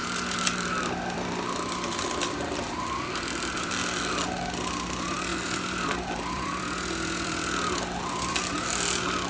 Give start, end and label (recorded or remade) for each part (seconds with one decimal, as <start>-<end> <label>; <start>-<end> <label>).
0.0-4.0 remade; 4.0-5.3 recorded; 5.3-8.4 remade; 8.4-9.3 recorded